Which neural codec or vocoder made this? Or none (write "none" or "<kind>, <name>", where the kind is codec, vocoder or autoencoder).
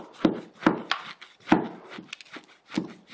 none